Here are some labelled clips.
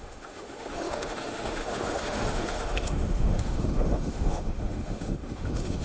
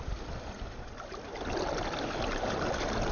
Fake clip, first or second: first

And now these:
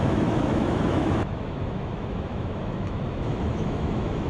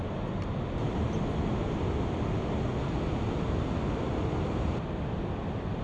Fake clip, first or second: first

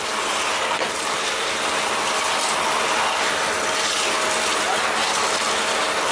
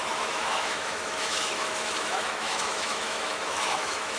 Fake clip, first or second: second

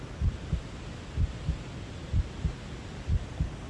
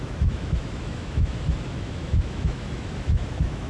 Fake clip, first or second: second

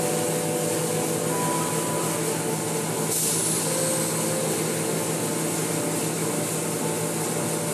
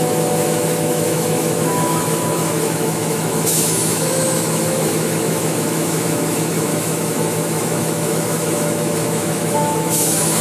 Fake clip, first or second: second